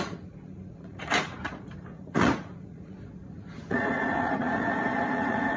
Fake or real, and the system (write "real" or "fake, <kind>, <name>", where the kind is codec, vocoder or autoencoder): fake, vocoder, Vocos